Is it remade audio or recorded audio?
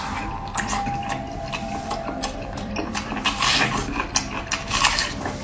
recorded